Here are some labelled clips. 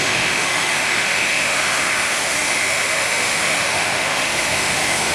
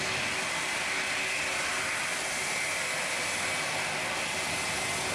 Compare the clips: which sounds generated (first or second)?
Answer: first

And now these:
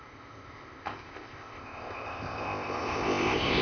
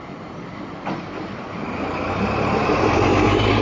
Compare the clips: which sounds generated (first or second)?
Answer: first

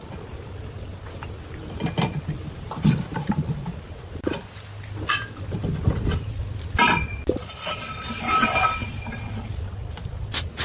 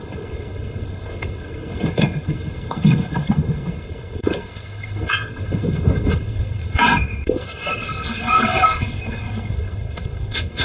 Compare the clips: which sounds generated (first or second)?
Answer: second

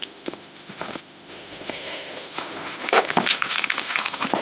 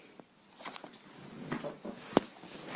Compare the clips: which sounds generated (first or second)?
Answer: first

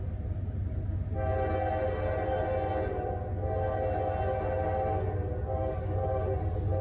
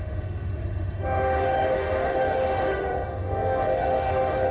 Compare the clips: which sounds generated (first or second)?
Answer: second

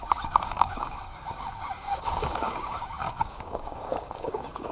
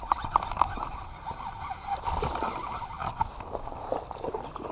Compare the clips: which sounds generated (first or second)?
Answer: first